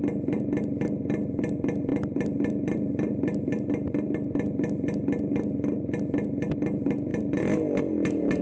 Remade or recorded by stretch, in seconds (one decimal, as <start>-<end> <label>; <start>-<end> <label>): 0.0-8.4 recorded